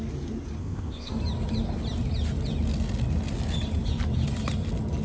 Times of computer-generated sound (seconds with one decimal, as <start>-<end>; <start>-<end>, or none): 0.6-1.1